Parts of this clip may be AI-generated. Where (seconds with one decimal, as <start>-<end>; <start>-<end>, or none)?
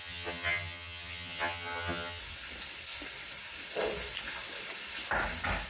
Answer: 0.0-2.2